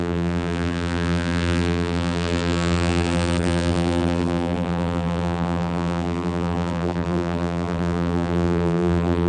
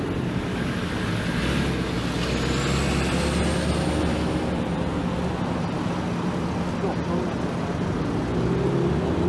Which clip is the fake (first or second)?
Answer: first